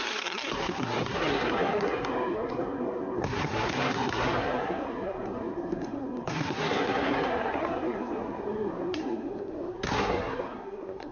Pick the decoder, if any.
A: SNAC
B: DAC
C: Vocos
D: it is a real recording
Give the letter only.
A